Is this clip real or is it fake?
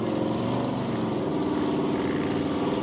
real